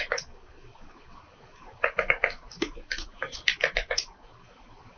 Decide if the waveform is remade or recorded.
remade